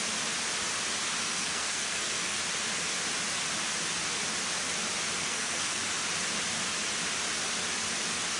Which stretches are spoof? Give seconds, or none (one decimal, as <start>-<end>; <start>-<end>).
1.2-2.4; 5.2-5.8